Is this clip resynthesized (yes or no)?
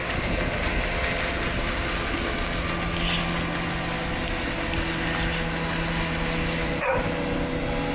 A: no